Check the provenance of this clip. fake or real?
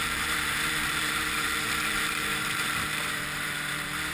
fake